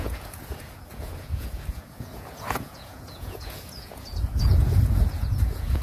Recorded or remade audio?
remade